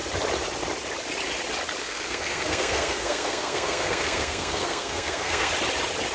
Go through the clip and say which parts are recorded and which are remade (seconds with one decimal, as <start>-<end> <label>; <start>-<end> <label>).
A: 0.0-1.8 recorded; 1.8-5.5 remade; 5.5-6.1 recorded